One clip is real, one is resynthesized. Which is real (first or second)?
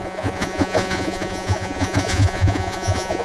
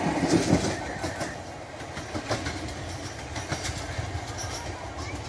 second